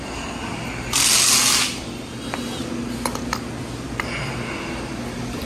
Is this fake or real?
real